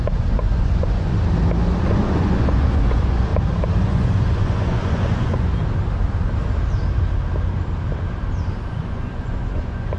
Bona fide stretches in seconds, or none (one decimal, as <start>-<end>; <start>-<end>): 1.1-1.8; 3.3-3.8; 5.5-8.7